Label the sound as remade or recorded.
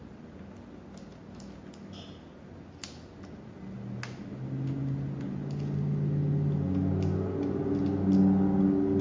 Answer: recorded